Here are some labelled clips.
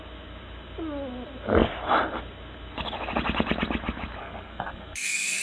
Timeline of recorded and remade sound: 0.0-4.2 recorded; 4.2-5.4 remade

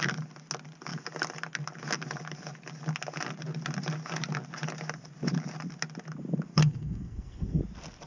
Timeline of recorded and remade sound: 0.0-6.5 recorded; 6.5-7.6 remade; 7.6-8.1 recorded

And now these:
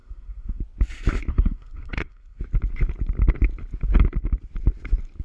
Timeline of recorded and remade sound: 0.0-0.6 remade; 0.6-1.3 recorded; 1.3-2.4 remade; 2.4-5.2 recorded

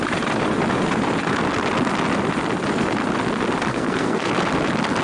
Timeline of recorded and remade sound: 0.0-3.7 recorded; 3.7-4.3 remade; 4.3-5.0 recorded

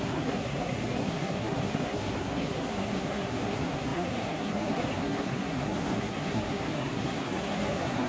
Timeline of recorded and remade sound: 0.0-8.1 remade

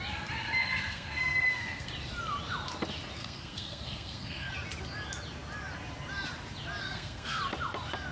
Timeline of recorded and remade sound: 0.0-0.6 recorded; 0.6-1.9 remade; 1.9-3.2 recorded; 3.2-4.5 remade; 4.5-6.8 recorded; 6.8-7.4 remade; 7.4-8.1 recorded

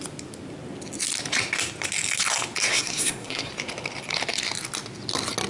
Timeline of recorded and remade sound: 0.0-2.7 recorded; 2.7-3.5 remade; 3.5-5.5 recorded